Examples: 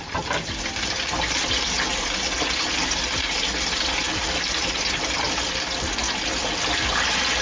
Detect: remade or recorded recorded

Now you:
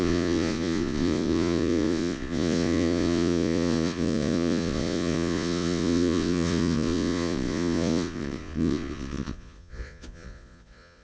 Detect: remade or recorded remade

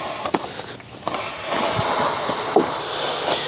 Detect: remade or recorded recorded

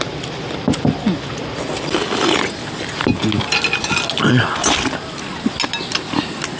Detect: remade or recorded recorded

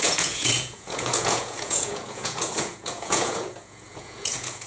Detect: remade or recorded remade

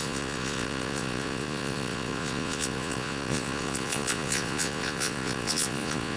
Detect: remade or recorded remade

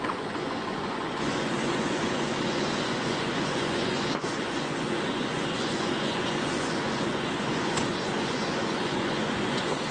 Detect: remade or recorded remade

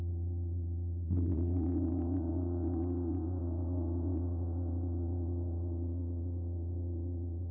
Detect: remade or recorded remade